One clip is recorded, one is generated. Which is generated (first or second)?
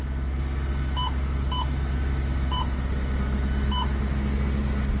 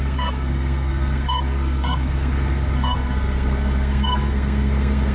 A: second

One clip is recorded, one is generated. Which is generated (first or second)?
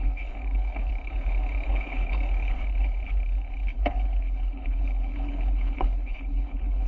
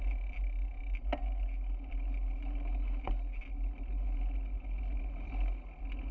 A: first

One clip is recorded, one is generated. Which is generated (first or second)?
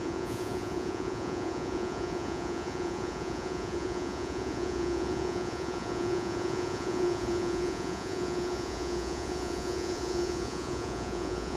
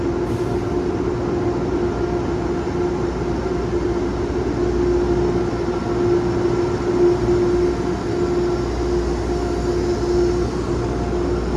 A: first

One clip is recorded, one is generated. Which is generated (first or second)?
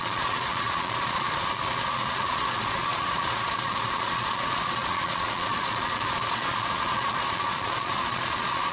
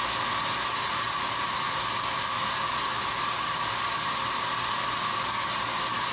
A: first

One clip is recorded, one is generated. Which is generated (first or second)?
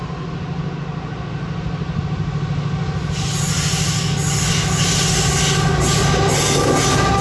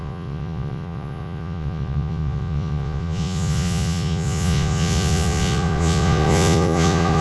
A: second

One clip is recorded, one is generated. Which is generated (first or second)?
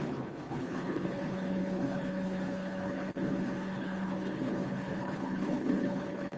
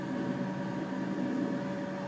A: first